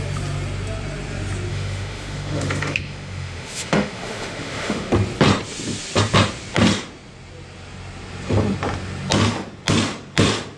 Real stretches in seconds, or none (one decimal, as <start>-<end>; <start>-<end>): 0.0-1.5; 4.9-10.6